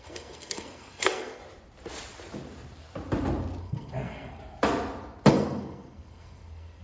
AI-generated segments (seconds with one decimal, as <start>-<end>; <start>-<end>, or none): 0.0-1.4; 3.6-4.4; 5.3-6.8